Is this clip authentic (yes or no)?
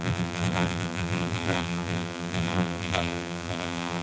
no